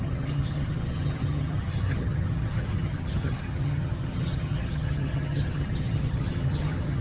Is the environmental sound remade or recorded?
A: remade